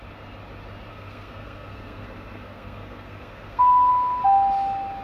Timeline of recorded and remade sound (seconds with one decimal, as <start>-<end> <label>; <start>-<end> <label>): 0.0-0.9 recorded; 0.9-3.9 remade; 3.9-5.0 recorded

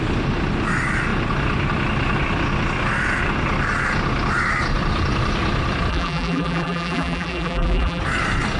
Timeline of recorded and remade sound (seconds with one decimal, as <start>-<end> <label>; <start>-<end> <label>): 0.0-5.9 recorded; 5.9-8.0 remade; 8.0-8.6 recorded

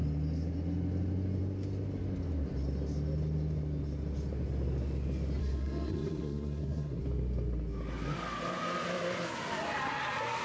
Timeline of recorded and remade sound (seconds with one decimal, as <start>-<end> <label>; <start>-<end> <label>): 0.0-5.4 recorded; 5.4-7.0 remade; 7.0-10.4 recorded

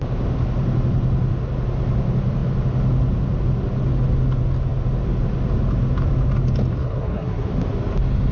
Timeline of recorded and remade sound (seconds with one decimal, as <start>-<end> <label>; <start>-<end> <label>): 0.0-6.8 recorded; 6.8-7.5 remade; 7.5-8.3 recorded

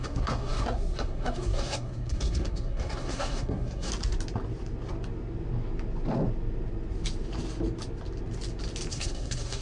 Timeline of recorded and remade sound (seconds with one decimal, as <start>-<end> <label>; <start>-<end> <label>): 0.0-3.9 remade; 3.9-8.9 recorded; 8.9-9.6 remade

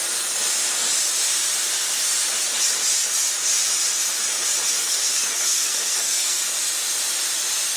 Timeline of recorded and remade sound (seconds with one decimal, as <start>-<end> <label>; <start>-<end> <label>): 0.0-4.7 recorded; 4.7-6.4 remade; 6.4-7.8 recorded

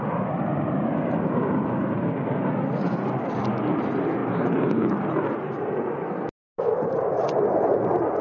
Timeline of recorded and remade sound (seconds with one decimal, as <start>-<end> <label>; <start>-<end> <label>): 0.0-8.2 recorded